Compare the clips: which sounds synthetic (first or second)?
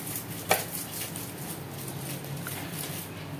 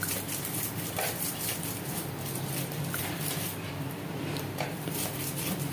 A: second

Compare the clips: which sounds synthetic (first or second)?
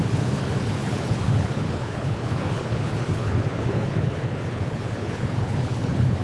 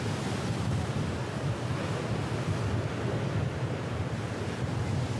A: first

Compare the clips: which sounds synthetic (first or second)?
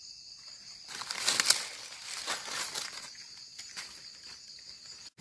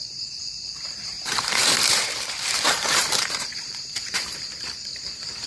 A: second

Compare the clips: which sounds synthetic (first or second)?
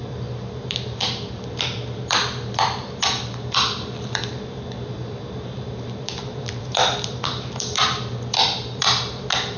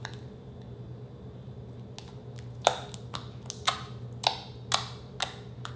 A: first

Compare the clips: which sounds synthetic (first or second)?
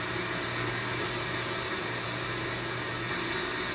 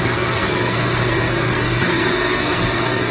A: second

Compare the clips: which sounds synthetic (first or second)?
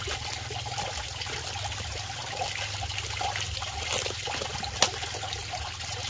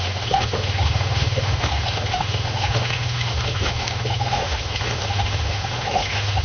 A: second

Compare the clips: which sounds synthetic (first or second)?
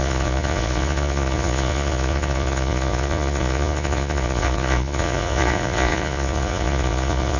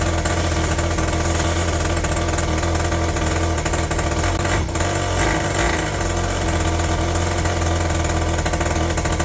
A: first